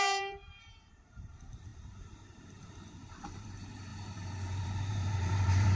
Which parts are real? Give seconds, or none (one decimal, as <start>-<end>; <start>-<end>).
none